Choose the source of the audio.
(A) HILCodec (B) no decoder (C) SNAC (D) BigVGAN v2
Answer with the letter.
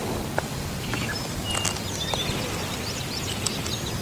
B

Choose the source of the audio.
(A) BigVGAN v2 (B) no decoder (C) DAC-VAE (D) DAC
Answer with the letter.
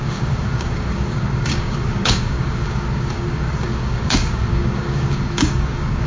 D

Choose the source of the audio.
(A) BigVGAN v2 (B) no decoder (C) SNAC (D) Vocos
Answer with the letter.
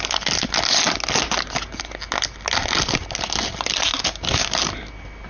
B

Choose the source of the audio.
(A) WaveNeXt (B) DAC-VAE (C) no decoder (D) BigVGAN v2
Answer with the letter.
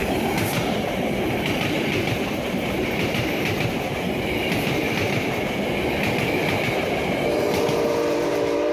D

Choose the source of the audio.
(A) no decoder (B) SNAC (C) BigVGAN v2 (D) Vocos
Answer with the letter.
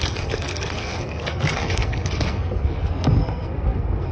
B